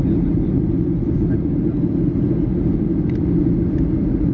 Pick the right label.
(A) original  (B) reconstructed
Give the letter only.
A